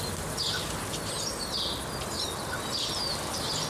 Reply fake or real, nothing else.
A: real